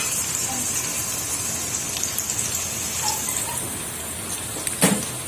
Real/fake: real